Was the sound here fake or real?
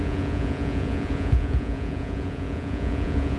fake